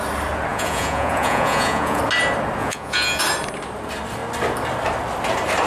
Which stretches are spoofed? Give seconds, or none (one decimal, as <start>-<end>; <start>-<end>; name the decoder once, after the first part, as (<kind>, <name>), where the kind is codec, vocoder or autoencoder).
0.5-2.0 (vocoder, Vocos); 2.6-3.2